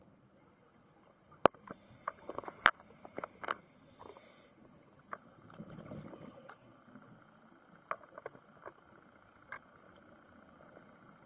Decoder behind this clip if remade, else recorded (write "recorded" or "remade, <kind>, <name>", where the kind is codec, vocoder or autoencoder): recorded